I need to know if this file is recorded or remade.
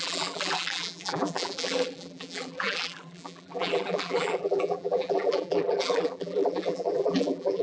remade